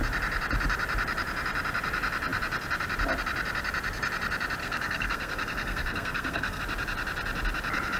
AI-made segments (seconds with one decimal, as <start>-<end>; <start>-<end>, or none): 4.6-6.6